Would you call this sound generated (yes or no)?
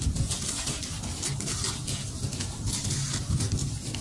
yes